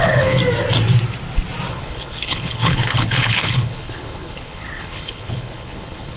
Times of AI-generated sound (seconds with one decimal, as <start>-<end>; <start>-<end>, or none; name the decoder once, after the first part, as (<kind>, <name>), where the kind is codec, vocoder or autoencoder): 0.0-0.4 (codec, HILCodec); 1.7-6.2